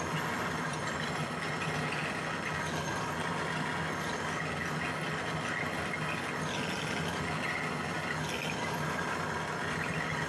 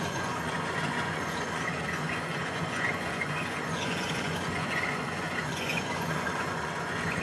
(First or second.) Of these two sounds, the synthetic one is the second